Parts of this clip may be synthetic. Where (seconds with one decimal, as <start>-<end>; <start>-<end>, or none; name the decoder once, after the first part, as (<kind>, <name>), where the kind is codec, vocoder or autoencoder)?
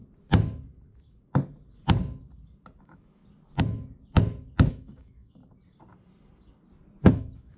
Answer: 2.8-3.2 (autoencoder, DAC-VAE); 4.7-5.4; 7.1-7.6